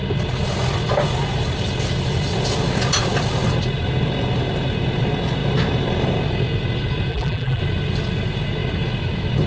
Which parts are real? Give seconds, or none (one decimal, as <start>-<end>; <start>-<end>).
0.0-7.1; 7.6-9.5